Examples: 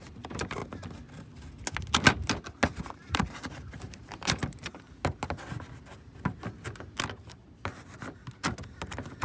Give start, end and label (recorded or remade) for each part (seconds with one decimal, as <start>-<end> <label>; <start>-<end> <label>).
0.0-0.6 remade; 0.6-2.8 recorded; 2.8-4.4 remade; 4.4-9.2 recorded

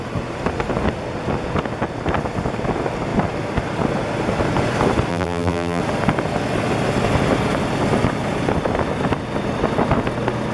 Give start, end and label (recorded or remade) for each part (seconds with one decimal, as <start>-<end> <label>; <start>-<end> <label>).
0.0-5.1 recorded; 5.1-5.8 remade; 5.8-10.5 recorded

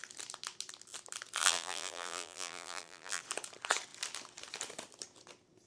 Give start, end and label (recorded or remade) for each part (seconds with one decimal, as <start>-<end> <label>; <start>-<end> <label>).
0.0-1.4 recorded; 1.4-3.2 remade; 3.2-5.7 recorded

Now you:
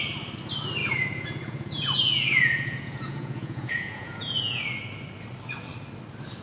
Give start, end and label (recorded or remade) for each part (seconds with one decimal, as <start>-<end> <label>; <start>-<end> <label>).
0.0-0.8 recorded; 0.8-4.6 remade; 4.6-6.4 recorded

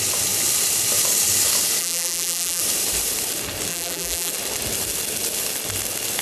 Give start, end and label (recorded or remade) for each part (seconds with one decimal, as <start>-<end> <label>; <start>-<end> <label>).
0.0-1.8 recorded; 1.8-2.6 remade; 2.6-3.7 recorded; 3.7-4.3 remade; 4.3-6.2 recorded

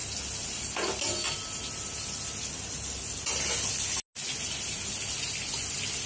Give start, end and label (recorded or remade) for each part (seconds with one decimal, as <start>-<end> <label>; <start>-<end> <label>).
0.0-6.1 recorded

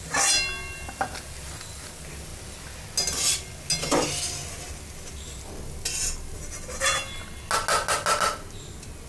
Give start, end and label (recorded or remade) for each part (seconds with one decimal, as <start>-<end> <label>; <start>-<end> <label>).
0.0-9.1 recorded